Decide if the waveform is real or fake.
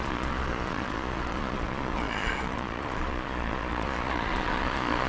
fake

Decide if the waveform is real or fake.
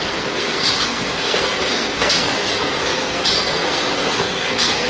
fake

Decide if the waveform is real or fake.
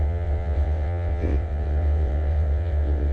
fake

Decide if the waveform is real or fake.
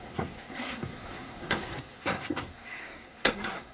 fake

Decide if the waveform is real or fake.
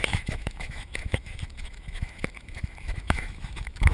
fake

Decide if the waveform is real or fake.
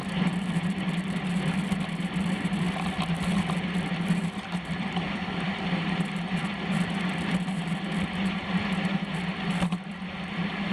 fake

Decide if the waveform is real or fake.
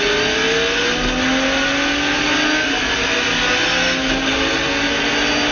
real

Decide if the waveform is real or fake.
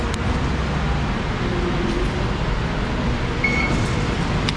real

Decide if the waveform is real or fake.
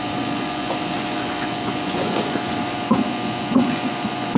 fake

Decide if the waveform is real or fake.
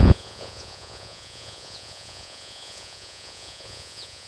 fake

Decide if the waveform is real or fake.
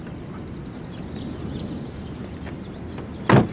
real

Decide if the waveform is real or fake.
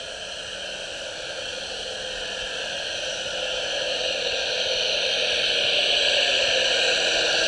real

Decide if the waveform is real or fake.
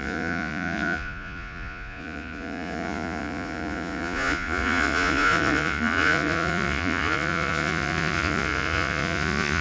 fake